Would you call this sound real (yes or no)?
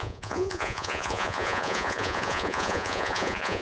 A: no